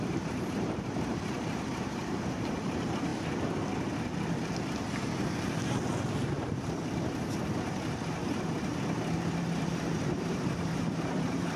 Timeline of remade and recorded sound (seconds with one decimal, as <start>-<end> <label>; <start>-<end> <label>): 0.0-3.1 remade; 3.1-7.6 recorded; 7.6-8.7 remade; 8.7-9.2 recorded; 9.2-11.6 remade

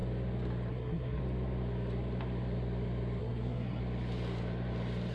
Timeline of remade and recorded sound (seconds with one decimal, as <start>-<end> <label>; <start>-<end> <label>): 0.0-0.7 recorded; 0.7-1.2 remade; 1.2-3.2 recorded; 3.2-3.8 remade; 3.8-5.1 recorded

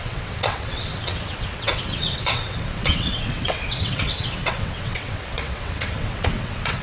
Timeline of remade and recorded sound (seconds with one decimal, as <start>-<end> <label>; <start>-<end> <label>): 0.0-6.8 remade

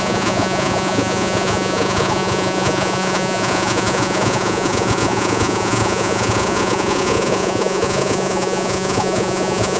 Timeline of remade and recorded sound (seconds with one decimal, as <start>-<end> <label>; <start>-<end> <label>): 0.0-9.8 remade

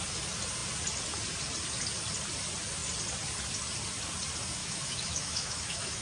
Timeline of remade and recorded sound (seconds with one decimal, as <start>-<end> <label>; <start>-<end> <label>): 0.0-4.6 recorded; 4.6-6.0 remade

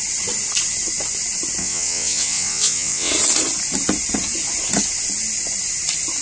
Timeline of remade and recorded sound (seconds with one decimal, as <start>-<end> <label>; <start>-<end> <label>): 0.0-1.6 recorded; 1.6-3.1 remade; 3.1-6.2 recorded